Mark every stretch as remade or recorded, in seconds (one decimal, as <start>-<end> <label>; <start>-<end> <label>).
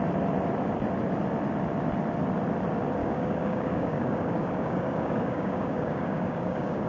0.0-3.0 recorded; 3.0-6.9 remade